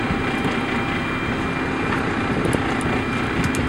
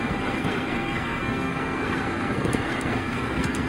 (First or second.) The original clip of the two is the first